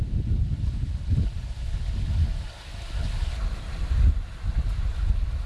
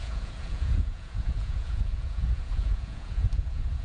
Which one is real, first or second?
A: first